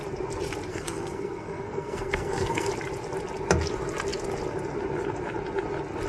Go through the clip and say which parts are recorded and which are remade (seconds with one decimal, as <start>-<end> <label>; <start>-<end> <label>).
0.0-0.7 recorded; 0.7-2.7 remade; 2.7-6.1 recorded